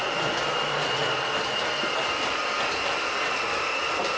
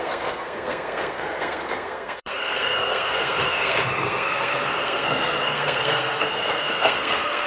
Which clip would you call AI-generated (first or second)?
second